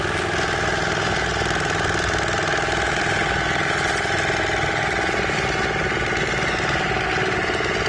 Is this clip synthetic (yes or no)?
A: no